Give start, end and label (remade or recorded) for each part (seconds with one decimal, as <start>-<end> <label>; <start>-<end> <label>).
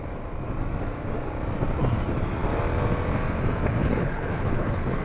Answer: 0.0-3.8 recorded; 3.8-5.0 remade